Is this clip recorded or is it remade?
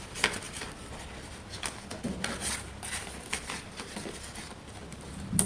recorded